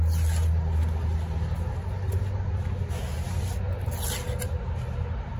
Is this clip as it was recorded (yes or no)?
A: yes